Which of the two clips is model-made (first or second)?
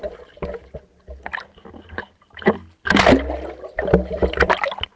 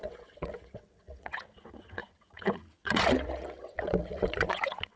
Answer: second